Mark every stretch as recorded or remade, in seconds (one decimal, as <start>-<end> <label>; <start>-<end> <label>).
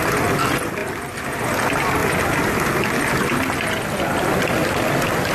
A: 0.0-5.3 recorded